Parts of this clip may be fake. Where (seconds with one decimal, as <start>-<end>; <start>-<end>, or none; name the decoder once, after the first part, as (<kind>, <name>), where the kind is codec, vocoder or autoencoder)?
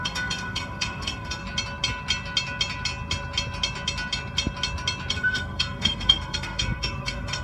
0.0-1.4 (codec, SNAC); 5.1-7.4